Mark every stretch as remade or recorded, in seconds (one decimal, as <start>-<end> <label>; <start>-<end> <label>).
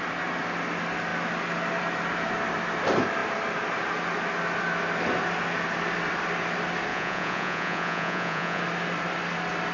0.0-6.9 recorded; 6.9-8.6 remade; 8.6-9.7 recorded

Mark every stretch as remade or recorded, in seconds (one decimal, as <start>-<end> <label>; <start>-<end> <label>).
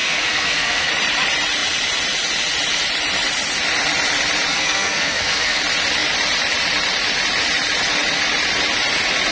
0.0-0.9 remade; 0.9-4.5 recorded; 4.5-5.6 remade; 5.6-9.3 recorded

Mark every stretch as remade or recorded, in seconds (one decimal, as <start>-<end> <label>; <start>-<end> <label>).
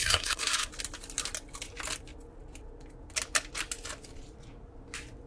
0.0-0.7 remade; 0.7-5.3 recorded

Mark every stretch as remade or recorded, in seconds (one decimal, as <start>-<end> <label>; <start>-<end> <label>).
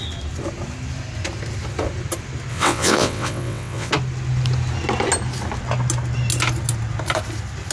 0.0-2.5 recorded; 2.5-3.9 remade; 3.9-7.7 recorded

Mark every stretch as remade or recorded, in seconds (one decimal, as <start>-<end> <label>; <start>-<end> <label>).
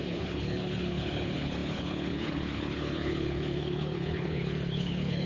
0.0-5.3 remade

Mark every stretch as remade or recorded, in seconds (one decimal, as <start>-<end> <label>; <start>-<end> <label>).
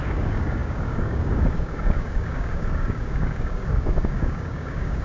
0.0-5.0 remade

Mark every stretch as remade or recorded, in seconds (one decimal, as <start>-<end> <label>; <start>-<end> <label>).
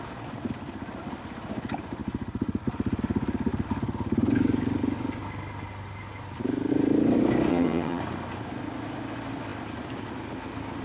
0.0-7.5 recorded; 7.5-8.0 remade; 8.0-10.8 recorded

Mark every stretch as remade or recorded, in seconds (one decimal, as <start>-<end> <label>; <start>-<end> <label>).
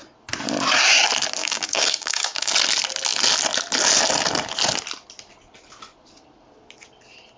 0.0-1.4 recorded; 1.4-2.5 remade; 2.5-7.4 recorded